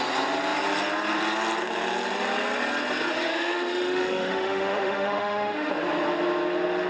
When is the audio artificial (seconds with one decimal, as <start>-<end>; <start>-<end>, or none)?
3.3-5.7